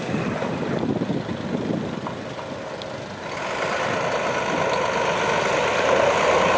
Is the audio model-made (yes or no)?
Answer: no